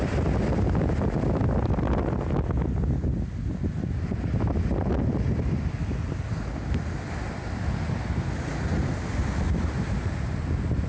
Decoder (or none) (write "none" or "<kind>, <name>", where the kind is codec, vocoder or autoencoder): none